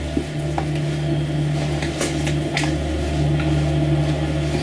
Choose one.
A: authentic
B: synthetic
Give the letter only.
A